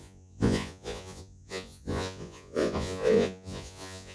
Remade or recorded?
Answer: remade